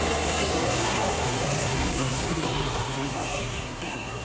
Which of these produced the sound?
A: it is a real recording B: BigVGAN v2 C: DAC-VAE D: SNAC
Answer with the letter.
D